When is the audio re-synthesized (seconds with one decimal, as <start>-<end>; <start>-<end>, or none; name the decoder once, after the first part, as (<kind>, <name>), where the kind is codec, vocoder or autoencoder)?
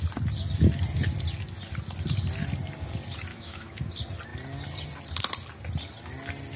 3.3-3.9 (autoencoder, DAC-VAE)